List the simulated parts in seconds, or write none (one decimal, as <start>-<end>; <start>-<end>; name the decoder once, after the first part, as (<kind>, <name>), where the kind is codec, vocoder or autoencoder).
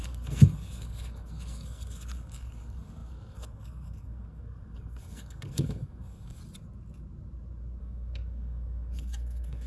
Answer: 0.0-6.4 (codec, SNAC); 7.8-9.7